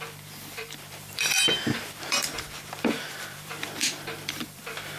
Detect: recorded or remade remade